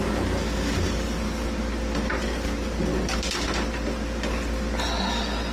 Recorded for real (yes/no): yes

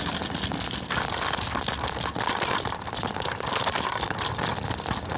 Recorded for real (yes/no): yes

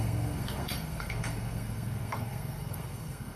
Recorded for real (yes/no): no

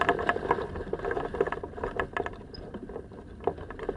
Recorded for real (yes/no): yes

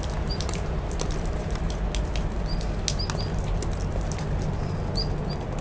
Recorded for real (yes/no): yes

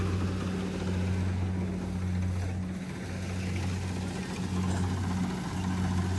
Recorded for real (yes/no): yes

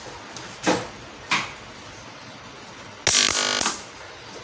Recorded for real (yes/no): yes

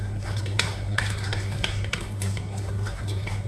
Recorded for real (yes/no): no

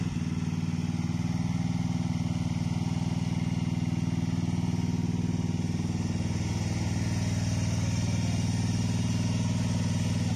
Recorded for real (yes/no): yes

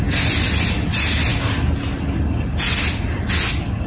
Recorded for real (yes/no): yes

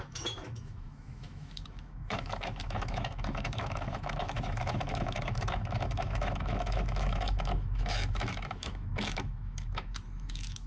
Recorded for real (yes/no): no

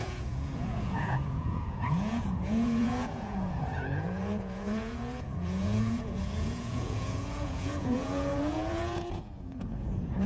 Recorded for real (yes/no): no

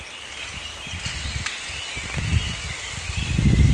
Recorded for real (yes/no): yes